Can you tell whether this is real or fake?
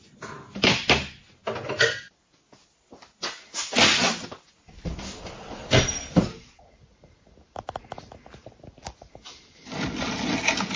real